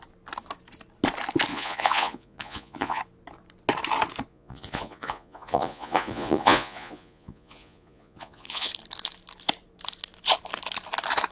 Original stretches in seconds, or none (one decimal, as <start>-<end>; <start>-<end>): 0.0-1.5; 3.0-4.3; 8.7-11.3